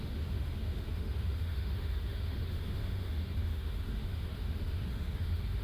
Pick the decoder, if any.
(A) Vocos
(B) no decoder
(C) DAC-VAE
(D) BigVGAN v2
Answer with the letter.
C